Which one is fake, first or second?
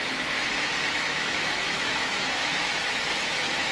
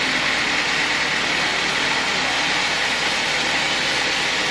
first